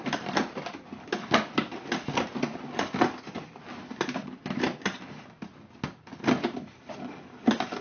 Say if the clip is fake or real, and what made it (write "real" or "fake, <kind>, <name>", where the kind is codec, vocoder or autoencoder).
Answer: real